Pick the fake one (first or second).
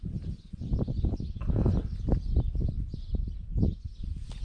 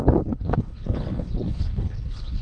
second